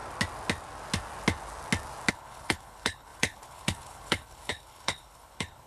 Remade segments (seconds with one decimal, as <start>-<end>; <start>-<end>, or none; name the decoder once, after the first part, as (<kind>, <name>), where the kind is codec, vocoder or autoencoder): 2.1-5.7 (codec, HILCodec)